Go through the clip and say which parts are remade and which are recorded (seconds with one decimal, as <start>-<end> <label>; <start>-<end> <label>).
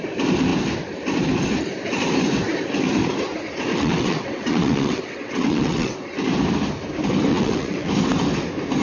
0.0-3.7 recorded; 3.7-6.1 remade; 6.1-7.3 recorded; 7.3-7.9 remade; 7.9-8.8 recorded